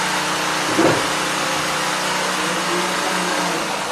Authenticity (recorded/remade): recorded